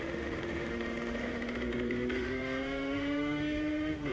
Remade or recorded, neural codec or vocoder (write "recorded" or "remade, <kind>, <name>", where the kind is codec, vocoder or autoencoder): remade, autoencoder, DAC-VAE